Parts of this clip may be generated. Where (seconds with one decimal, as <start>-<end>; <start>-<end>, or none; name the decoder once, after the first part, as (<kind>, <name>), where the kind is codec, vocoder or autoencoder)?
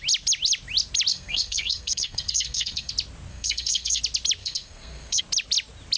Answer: 1.1-2.9 (codec, SNAC); 3.3-4.0; 4.4-5.2